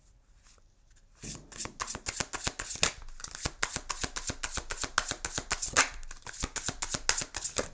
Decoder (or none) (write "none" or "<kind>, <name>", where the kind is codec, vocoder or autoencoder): none